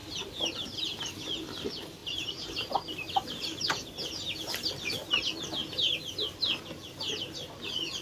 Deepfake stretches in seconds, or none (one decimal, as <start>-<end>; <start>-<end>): 2.0-4.1